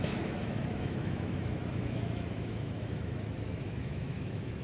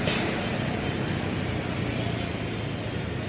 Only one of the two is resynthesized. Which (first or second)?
first